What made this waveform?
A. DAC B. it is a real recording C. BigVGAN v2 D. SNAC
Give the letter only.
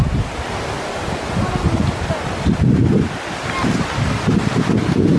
B